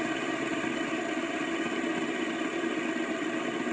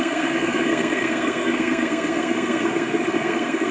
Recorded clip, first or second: first